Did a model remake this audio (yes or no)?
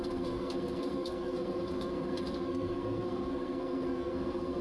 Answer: yes